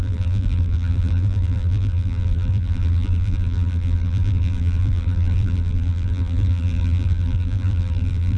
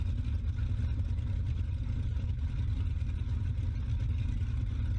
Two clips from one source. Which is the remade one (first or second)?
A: first